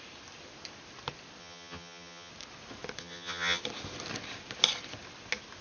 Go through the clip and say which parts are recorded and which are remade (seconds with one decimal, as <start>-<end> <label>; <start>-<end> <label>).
0.0-1.4 recorded; 1.4-2.3 remade; 2.3-3.0 recorded; 3.0-3.6 remade; 3.6-5.6 recorded